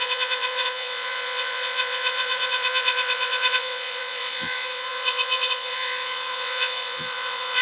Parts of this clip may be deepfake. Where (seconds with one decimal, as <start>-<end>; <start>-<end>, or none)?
0.0-7.6